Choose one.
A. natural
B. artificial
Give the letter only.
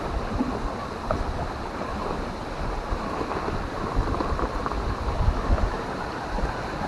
A